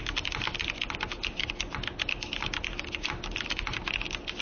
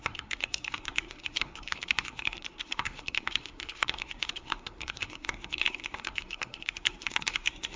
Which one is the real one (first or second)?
first